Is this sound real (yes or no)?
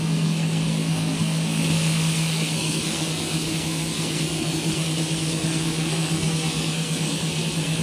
no